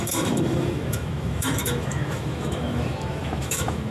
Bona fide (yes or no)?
no